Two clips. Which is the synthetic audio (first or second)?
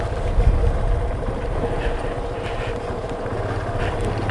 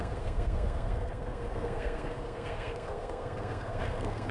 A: second